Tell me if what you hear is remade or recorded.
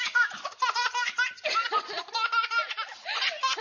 recorded